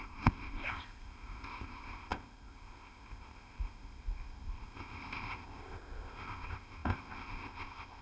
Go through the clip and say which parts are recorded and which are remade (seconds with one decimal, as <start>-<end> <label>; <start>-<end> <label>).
0.0-8.0 remade